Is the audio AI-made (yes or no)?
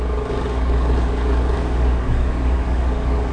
yes